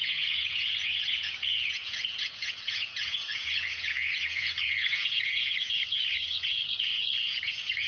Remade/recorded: remade